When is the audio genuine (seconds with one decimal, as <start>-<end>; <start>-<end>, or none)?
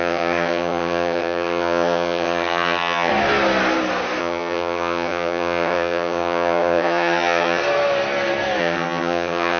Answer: 3.1-4.2; 7.6-8.6